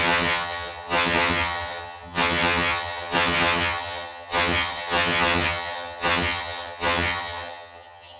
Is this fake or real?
fake